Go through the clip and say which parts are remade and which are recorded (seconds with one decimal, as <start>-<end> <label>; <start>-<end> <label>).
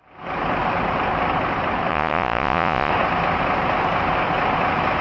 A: 0.0-1.9 recorded; 1.9-2.9 remade; 2.9-5.0 recorded